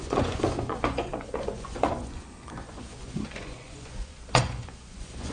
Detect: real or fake fake